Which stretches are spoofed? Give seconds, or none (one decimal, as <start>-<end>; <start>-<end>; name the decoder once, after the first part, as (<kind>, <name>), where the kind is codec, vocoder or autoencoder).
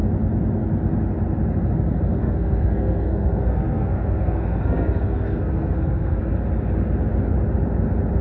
2.2-6.2 (codec, SNAC)